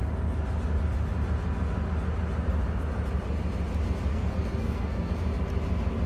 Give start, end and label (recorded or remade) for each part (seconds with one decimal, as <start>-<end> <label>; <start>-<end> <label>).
0.0-4.1 recorded; 4.1-5.1 remade; 5.1-6.1 recorded